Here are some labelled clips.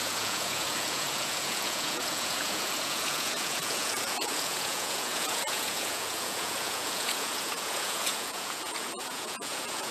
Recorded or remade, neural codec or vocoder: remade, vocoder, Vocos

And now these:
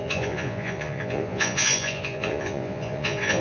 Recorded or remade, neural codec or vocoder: remade, vocoder, Vocos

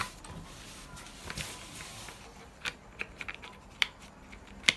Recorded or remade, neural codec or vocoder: recorded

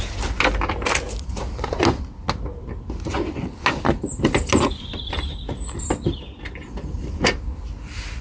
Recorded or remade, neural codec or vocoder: recorded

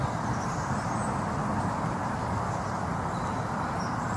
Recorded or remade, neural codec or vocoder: recorded